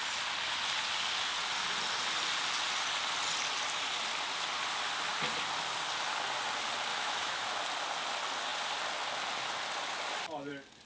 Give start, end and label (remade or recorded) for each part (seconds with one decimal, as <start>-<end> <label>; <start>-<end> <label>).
0.0-6.9 recorded; 6.9-7.6 remade; 7.6-10.9 recorded